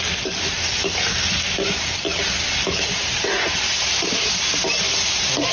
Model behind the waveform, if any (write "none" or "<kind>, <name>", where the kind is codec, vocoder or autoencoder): none